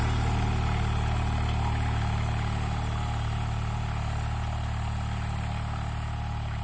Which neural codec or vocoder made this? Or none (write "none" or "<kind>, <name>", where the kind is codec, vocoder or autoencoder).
none